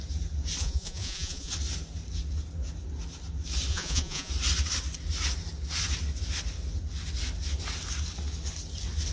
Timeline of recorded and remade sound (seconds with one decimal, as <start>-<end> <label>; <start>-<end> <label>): 0.0-0.6 recorded; 0.6-1.5 remade; 1.5-3.7 recorded; 3.7-4.3 remade; 4.3-9.1 recorded